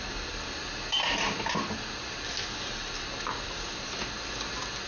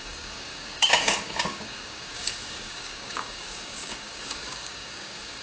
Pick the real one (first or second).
first